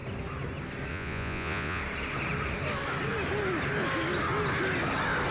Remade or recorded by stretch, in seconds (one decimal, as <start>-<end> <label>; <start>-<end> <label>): 0.0-0.9 recorded; 0.9-1.8 remade; 1.8-5.3 recorded